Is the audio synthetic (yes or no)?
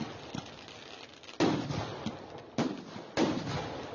no